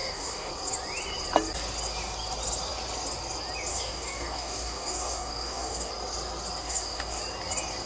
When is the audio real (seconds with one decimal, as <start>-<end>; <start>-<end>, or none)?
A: 0.5-3.7; 5.9-6.6; 7.2-7.9